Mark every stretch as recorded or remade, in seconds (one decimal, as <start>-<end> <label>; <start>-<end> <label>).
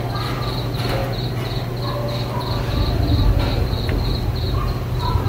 0.0-1.0 remade; 1.0-2.6 recorded; 2.6-5.3 remade